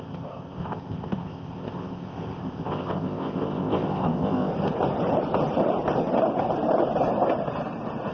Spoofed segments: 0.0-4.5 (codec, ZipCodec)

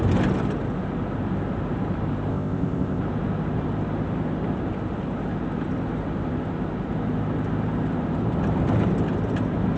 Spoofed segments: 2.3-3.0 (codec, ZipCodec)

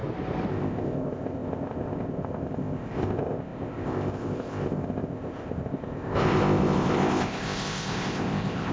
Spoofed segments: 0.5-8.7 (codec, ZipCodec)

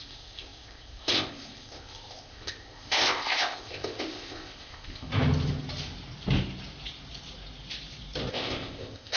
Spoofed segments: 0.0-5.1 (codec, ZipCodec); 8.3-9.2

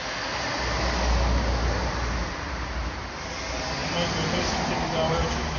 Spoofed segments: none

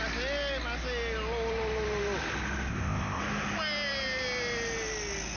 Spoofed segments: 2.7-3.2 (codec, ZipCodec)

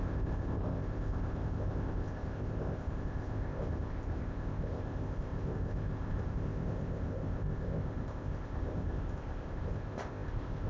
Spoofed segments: 0.0-10.7 (codec, ZipCodec)